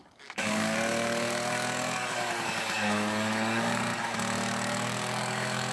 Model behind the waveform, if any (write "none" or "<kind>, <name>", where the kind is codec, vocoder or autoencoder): codec, DAC